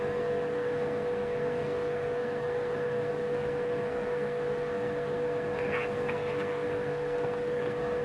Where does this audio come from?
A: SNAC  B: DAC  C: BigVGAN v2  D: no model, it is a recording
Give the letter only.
A